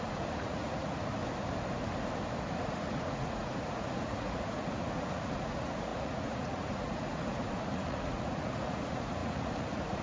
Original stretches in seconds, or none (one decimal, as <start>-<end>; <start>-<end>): 1.2-2.6

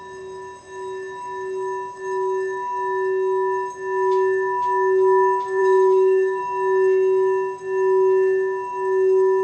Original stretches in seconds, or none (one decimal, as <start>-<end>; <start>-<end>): 0.0-5.6; 6.4-9.4

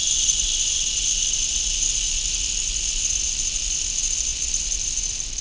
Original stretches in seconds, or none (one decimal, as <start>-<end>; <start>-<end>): 0.0-5.4

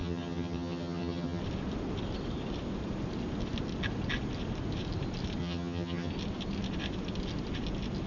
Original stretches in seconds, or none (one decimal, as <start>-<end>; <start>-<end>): 1.4-5.4; 6.1-8.1

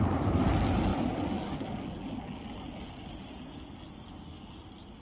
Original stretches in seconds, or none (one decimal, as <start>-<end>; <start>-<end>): 0.0-5.0

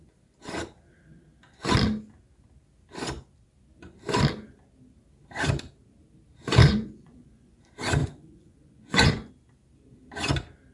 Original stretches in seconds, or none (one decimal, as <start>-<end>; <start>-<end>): 0.0-6.6; 7.6-8.0; 9.3-10.7

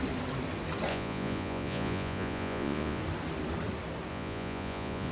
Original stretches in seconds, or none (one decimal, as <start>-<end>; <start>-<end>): 0.0-0.9; 3.0-4.1

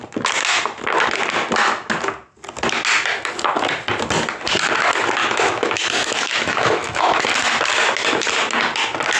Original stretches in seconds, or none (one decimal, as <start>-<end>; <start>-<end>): 0.0-5.2; 7.2-9.2